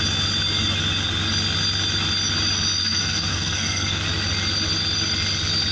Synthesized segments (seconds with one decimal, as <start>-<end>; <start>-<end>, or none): 2.8-4.0